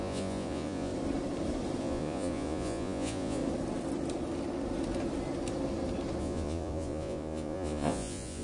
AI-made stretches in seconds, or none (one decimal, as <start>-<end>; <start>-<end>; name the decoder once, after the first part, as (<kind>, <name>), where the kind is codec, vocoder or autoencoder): 0.0-0.9 (vocoder, Vocos); 1.8-3.4; 6.2-8.4